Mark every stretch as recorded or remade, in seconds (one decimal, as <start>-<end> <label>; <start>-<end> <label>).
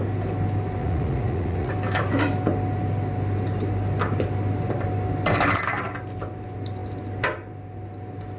0.0-0.8 recorded; 0.8-1.7 remade; 1.7-8.4 recorded